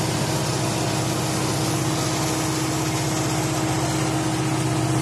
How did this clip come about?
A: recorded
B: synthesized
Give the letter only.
A